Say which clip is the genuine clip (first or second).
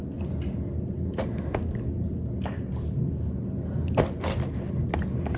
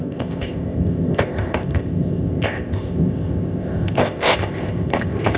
first